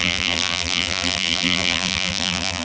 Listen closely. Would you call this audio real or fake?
fake